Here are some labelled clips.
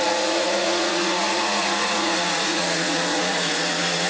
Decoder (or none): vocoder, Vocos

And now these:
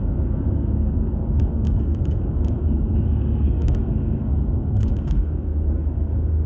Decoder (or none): codec, SNAC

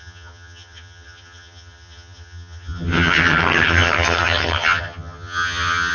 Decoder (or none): vocoder, HiFi-GAN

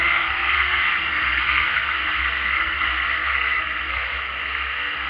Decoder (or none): codec, SNAC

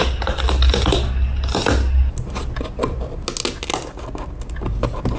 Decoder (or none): none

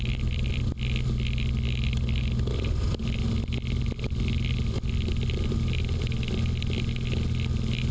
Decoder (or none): none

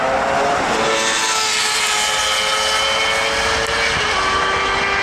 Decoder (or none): none